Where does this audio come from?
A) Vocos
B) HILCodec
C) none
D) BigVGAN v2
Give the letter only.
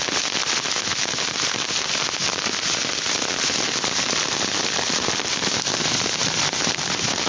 C